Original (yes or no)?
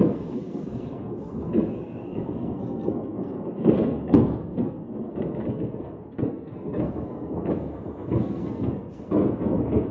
no